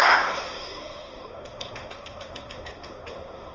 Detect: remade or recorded remade